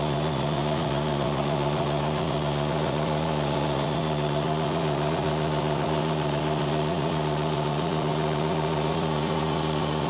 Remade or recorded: remade